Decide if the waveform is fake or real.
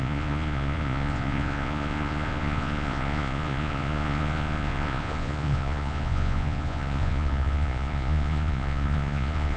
fake